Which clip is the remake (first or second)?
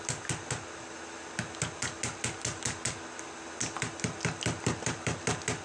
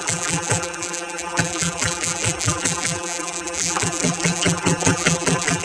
second